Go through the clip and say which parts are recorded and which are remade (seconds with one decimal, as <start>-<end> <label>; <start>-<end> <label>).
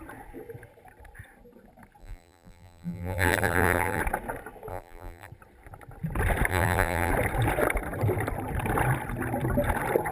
0.0-2.0 recorded; 2.0-4.0 remade; 4.0-4.7 recorded; 4.7-5.3 remade; 5.3-6.5 recorded; 6.5-7.1 remade; 7.1-10.1 recorded